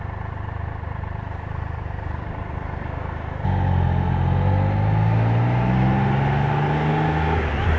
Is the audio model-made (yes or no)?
no